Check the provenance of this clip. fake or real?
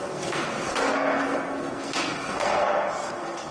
fake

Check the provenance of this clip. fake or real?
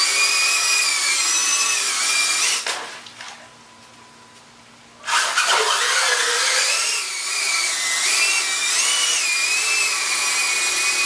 real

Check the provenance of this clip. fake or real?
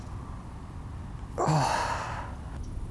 real